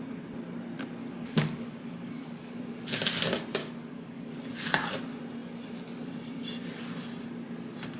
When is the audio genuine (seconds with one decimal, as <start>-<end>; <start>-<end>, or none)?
0.0-1.0; 2.6-3.6; 4.3-8.0

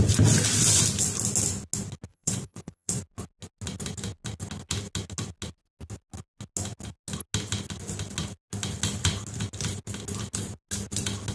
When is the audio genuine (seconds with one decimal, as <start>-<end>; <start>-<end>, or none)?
0.0-2.1; 3.0-11.3

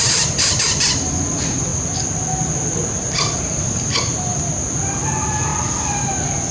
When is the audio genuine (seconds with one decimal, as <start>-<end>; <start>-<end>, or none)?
0.0-6.5

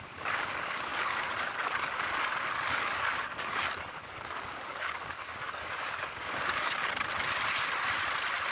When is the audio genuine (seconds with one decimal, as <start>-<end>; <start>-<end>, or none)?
6.8-8.5

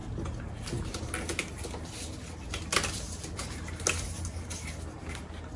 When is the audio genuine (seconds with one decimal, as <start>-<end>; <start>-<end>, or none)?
0.0-5.6

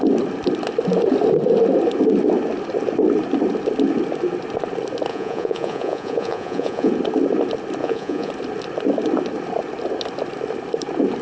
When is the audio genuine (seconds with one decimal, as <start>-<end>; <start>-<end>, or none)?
0.0-5.1; 6.9-7.8; 8.3-11.2

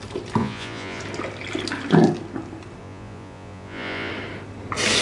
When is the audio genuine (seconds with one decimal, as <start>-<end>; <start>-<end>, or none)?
0.0-0.4; 1.0-2.8; 4.1-5.0

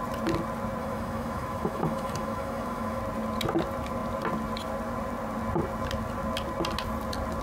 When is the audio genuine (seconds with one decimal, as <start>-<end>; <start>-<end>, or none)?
0.0-0.8; 3.0-7.4